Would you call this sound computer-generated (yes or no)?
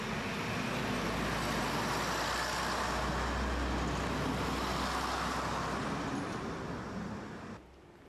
no